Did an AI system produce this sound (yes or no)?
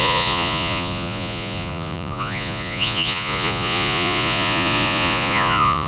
yes